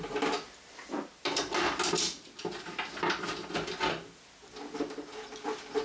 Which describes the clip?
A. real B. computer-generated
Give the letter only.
A